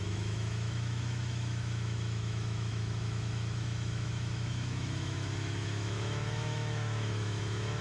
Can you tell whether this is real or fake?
fake